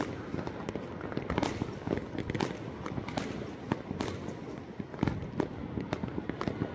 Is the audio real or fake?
real